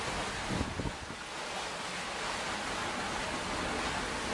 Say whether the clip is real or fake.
real